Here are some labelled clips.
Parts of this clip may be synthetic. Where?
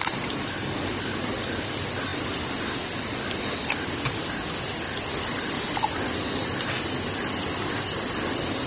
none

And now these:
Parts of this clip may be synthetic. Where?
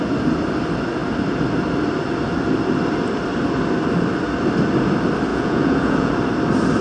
5.3-6.1 (vocoder, Vocos)